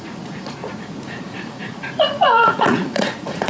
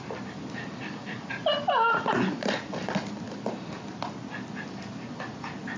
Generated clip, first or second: first